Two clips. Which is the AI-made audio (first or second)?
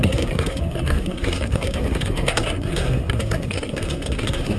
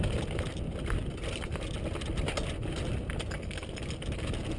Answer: first